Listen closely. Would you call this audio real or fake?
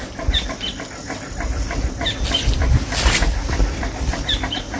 real